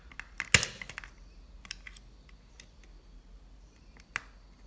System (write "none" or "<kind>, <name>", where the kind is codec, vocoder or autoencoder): none